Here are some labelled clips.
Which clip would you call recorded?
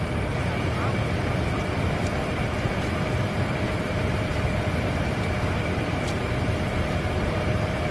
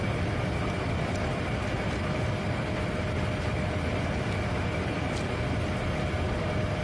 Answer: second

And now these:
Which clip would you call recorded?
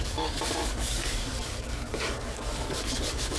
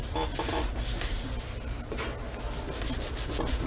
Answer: second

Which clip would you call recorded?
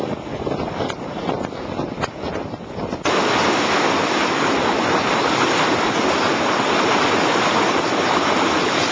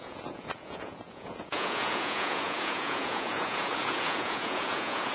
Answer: first